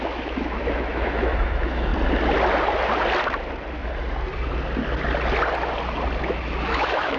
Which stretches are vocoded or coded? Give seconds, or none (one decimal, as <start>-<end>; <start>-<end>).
0.0-1.9; 6.2-7.2